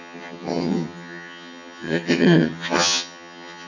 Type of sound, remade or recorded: remade